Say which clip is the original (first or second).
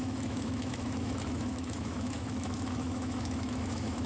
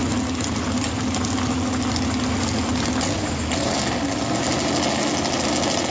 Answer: second